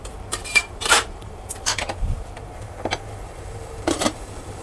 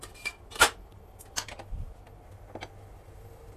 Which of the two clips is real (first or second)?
second